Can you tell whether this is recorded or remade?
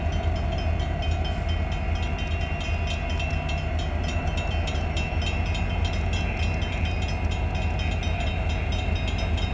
recorded